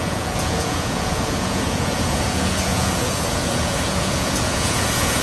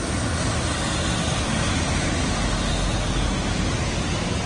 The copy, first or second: first